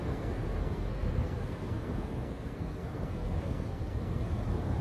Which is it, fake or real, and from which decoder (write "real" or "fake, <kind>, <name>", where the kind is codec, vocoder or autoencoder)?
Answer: fake, codec, SNAC